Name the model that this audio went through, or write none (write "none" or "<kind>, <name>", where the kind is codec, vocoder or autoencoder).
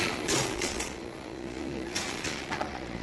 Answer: vocoder, Vocos